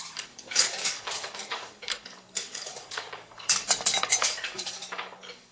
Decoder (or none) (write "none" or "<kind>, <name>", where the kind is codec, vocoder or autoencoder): codec, DAC